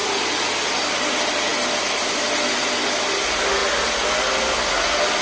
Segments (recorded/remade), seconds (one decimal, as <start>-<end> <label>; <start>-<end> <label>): 0.0-5.2 recorded